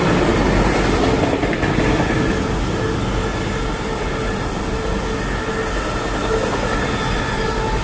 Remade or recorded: recorded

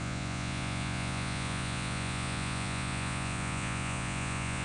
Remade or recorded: remade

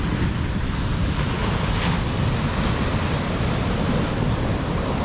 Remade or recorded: recorded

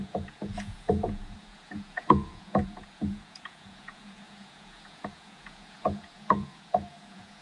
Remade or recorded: remade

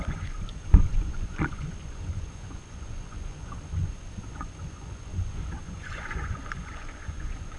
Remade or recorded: remade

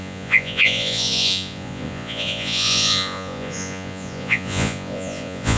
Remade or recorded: remade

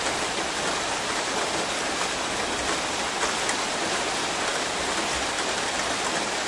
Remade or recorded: recorded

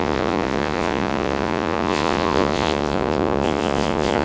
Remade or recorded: remade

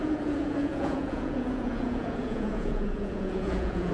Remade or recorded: remade